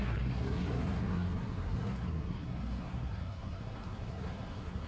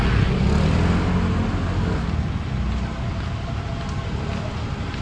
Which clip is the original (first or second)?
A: second